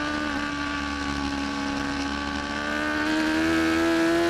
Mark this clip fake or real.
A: real